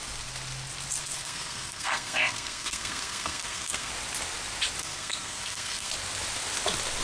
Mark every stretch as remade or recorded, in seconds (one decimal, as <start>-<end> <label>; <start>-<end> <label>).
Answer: 0.0-1.0 recorded; 1.0-3.9 remade; 3.9-4.8 recorded; 4.8-5.9 remade; 5.9-7.0 recorded